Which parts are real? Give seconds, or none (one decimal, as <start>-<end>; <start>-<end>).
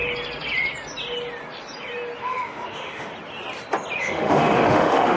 0.0-2.2; 3.1-4.0